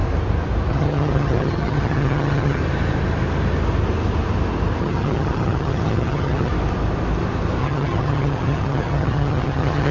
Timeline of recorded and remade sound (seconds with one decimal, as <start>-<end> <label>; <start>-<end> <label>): 0.0-0.7 recorded; 0.7-2.6 remade; 2.6-4.8 recorded; 4.8-6.5 remade; 6.5-7.6 recorded; 7.6-9.9 remade